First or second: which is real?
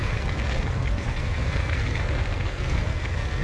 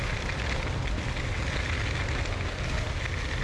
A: second